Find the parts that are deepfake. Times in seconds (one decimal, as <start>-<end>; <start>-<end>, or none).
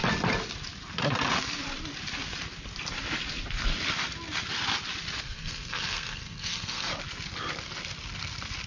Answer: 5.2-6.9